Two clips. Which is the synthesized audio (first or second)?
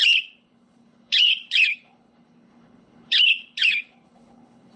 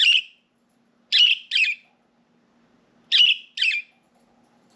first